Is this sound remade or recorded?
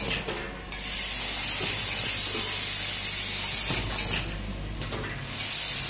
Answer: recorded